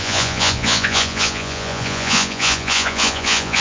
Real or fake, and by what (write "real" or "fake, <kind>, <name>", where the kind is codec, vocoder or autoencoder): fake, vocoder, Vocos